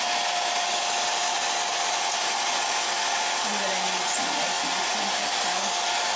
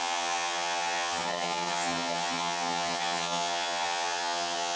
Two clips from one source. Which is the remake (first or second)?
second